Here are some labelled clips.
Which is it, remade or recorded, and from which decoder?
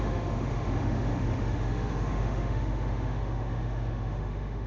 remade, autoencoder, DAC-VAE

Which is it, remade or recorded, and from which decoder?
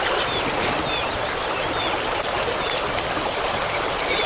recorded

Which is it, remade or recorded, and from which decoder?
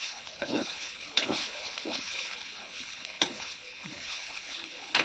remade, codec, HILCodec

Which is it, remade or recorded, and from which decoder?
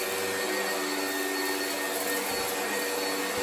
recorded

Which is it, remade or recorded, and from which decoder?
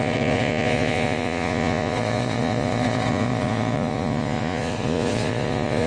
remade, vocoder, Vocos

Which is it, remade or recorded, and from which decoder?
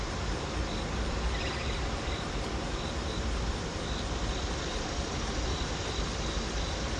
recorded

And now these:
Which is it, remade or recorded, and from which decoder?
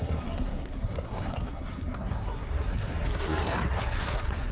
remade, codec, SNAC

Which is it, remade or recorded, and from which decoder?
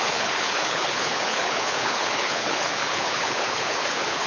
remade, codec, HILCodec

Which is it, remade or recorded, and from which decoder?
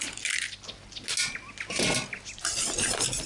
recorded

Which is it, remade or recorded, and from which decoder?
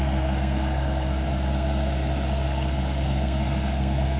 remade, codec, SNAC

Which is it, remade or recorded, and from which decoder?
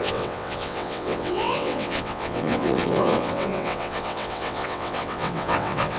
remade, vocoder, WaveNeXt